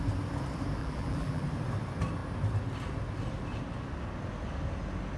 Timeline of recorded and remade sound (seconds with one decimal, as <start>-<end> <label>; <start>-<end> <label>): 0.0-0.8 recorded; 0.8-1.4 remade; 1.4-5.2 recorded